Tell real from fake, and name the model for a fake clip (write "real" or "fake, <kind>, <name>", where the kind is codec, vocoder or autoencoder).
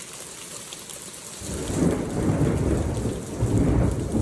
real